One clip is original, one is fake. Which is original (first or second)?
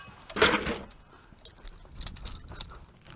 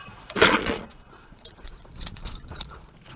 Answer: first